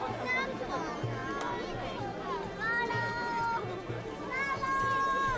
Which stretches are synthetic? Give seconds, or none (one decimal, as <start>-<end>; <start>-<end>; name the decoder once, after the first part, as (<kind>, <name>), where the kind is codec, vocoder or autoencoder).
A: none